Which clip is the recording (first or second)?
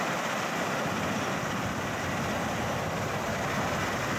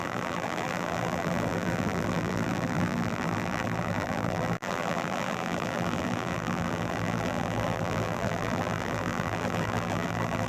first